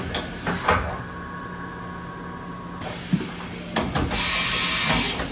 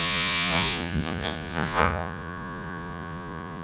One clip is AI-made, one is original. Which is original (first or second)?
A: first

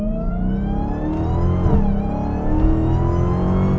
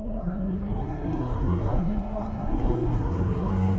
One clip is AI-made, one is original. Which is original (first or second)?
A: first